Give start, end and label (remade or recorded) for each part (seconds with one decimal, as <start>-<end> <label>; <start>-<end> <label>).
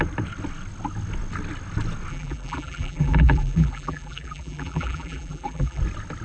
0.0-2.1 recorded; 2.1-5.8 remade; 5.8-6.2 recorded